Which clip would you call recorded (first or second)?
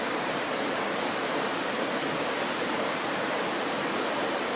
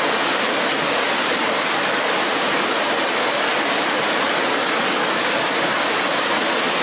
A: second